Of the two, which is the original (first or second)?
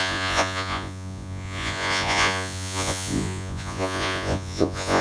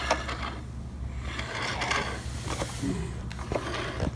second